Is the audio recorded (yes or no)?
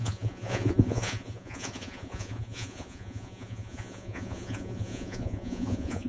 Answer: no